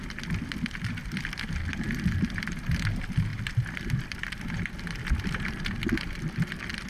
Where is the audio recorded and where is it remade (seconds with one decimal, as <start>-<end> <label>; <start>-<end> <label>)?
0.0-3.3 recorded; 3.3-6.5 remade; 6.5-6.9 recorded